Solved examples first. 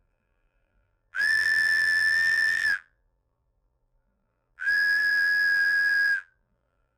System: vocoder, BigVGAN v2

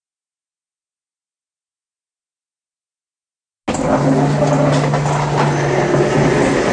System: none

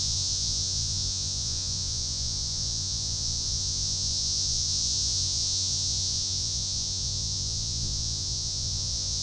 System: vocoder, Vocos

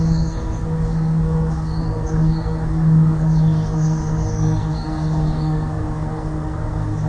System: codec, SNAC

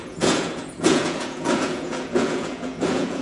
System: vocoder, Vocos